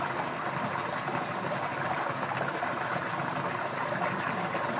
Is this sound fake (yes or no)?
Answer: no